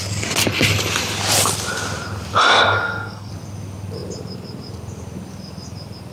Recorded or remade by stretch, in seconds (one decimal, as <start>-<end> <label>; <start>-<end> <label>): 0.0-2.5 recorded; 2.5-3.3 remade; 3.3-6.1 recorded